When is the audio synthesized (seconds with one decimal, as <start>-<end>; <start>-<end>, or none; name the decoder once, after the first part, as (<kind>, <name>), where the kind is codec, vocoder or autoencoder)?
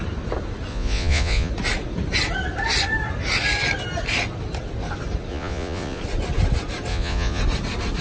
0.7-1.5 (vocoder, Vocos); 5.3-6.0; 6.9-7.4